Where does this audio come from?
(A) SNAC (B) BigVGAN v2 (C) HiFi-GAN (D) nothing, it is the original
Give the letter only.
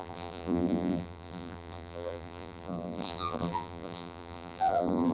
B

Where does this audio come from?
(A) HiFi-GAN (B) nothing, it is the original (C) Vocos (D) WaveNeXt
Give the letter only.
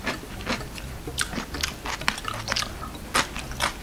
B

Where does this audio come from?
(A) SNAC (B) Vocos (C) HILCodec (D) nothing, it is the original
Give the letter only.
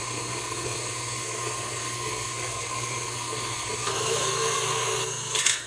A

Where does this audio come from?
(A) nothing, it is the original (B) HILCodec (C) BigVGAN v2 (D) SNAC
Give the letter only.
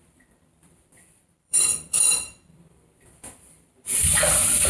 C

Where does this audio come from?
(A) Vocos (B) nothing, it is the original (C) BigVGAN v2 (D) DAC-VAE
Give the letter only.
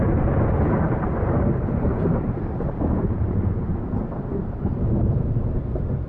C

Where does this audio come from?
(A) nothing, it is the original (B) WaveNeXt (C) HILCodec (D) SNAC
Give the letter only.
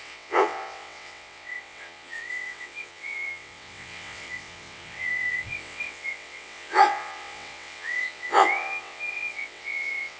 B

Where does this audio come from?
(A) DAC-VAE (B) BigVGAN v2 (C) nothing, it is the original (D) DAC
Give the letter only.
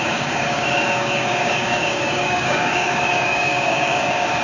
D